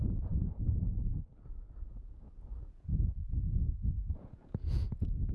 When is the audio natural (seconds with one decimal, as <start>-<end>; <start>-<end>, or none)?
1.1-1.9